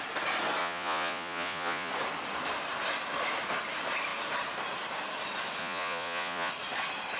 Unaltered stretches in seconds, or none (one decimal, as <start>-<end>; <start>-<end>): 0.0-0.6; 1.9-5.6; 6.5-7.2